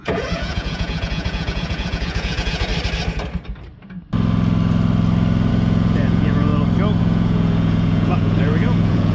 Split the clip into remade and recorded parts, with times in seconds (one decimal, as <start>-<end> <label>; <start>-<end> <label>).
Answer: 0.0-2.7 remade; 2.7-5.5 recorded; 5.5-6.5 remade; 6.5-7.0 recorded; 7.0-9.1 remade